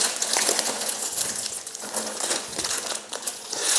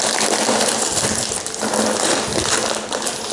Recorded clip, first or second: second